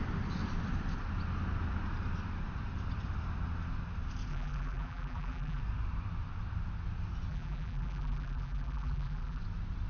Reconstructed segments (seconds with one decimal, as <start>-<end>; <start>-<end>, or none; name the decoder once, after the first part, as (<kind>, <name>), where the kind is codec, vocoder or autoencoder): 4.3-5.6 (vocoder, BigVGAN v2); 7.3-9.4